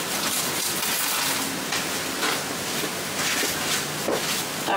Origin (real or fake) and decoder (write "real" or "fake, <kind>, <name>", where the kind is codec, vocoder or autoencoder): real